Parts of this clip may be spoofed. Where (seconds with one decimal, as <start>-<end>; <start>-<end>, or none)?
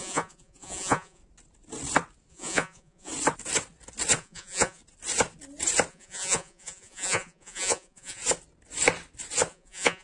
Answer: 0.0-1.2; 2.3-3.1; 4.2-4.8; 5.9-8.2; 9.5-10.0